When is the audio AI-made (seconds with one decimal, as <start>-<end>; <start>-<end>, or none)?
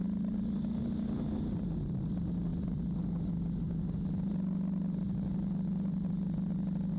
none